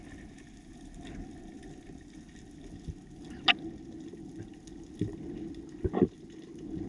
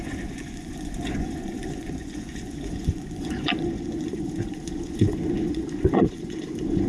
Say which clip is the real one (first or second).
first